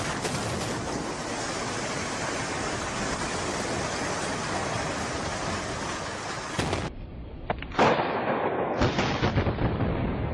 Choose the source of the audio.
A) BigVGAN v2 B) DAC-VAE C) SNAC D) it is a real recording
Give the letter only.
D